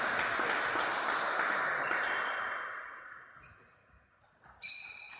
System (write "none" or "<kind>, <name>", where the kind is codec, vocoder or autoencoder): none